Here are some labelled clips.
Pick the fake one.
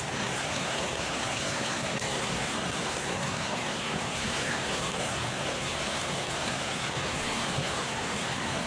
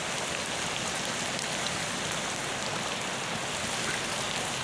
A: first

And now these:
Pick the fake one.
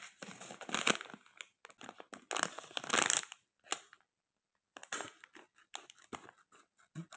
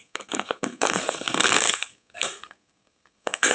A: second